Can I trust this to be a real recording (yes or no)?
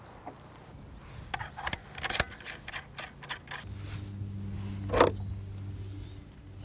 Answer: yes